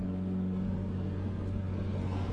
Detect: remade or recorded remade